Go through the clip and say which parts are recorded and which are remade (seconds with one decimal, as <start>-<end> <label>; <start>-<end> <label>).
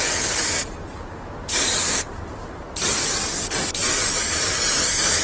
0.0-1.4 recorded; 1.4-3.0 remade; 3.0-5.2 recorded